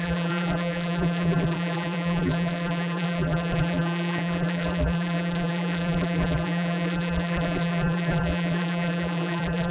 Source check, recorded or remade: remade